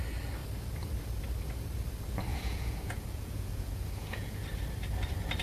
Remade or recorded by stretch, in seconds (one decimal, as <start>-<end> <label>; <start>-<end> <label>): 0.0-2.3 recorded; 2.3-4.4 remade; 4.4-5.4 recorded